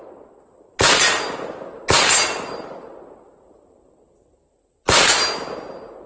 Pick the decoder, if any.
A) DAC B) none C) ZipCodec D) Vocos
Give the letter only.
B